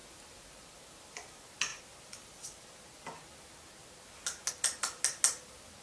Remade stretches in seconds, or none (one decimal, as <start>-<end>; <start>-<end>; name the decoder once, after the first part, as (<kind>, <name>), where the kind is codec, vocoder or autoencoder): none